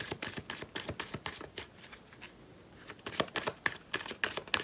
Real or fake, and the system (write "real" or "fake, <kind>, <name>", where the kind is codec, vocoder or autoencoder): real